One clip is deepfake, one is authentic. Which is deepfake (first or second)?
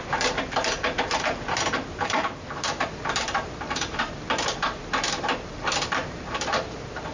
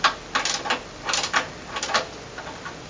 first